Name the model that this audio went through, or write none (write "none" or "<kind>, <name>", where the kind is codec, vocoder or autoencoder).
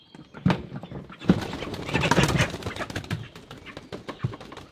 none